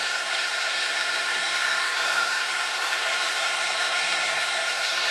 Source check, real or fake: fake